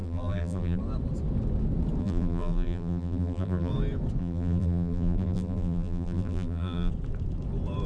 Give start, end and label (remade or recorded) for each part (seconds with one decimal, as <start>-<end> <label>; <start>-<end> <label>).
0.0-0.8 remade; 0.8-2.0 recorded; 2.0-3.7 remade; 3.7-4.2 recorded; 4.2-6.9 remade; 6.9-7.9 recorded